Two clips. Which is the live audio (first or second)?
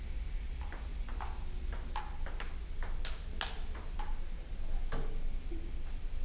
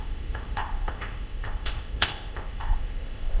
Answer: first